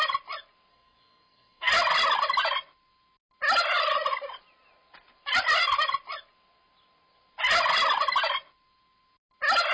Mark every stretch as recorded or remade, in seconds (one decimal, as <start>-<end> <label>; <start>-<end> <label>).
0.0-0.7 recorded; 0.7-1.7 remade; 1.7-9.7 recorded